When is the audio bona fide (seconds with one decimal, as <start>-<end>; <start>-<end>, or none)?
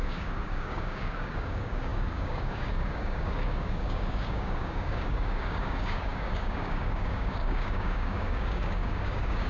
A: none